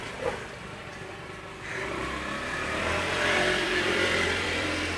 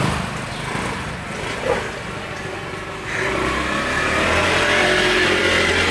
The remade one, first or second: first